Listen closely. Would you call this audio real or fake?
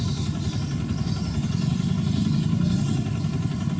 real